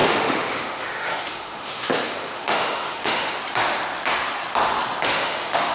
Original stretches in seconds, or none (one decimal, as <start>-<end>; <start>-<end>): 3.4-5.1